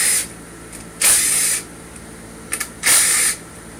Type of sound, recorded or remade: recorded